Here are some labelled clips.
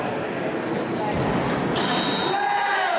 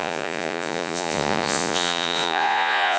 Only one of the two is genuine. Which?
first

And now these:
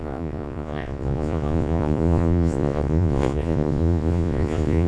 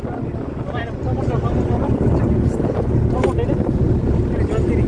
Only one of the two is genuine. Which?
second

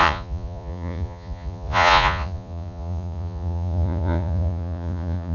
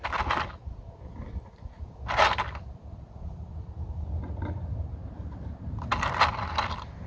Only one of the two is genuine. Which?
second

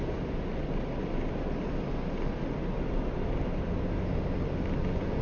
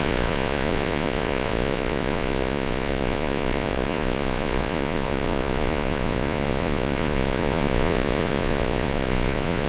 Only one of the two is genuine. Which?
first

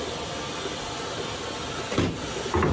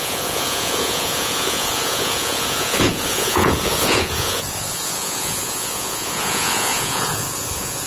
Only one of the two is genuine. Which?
first